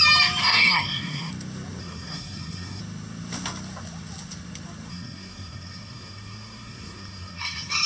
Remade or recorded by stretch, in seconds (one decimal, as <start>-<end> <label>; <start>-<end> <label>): 0.0-0.4 recorded; 0.4-1.3 remade; 1.3-1.8 recorded; 1.8-2.8 remade; 2.8-4.9 recorded; 4.9-7.9 remade